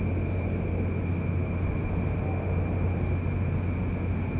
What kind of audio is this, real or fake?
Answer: real